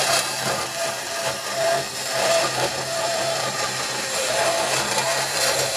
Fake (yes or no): yes